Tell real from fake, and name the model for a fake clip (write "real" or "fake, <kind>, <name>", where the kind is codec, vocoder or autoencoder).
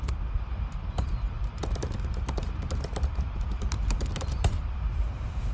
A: fake, vocoder, BigVGAN v2